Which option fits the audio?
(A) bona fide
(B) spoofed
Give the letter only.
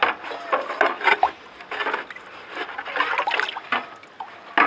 A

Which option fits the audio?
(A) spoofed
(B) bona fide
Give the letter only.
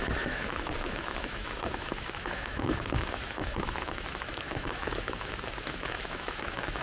A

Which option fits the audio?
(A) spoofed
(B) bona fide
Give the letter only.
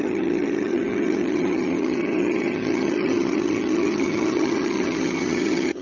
A